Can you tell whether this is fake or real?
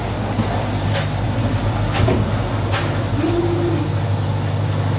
real